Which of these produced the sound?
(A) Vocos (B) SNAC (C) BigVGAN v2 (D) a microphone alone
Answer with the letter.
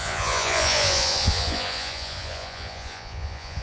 A